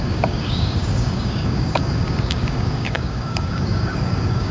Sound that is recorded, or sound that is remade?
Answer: remade